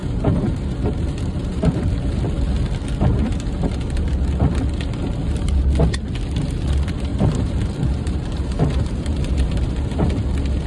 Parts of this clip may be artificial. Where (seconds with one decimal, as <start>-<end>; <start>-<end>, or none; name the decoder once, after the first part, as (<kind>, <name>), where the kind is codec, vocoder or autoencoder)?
0.0-2.2 (vocoder, BigVGAN v2); 7.1-10.1